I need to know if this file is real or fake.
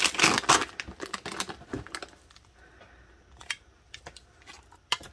real